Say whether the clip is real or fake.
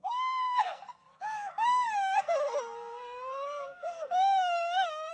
fake